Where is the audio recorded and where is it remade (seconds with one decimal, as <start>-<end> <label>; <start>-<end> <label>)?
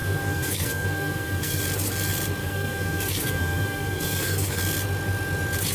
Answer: 0.0-1.6 remade; 1.6-2.4 recorded; 2.4-4.6 remade; 4.6-5.7 recorded